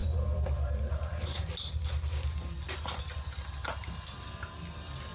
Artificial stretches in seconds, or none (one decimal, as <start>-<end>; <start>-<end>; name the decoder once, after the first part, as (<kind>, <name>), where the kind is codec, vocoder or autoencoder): none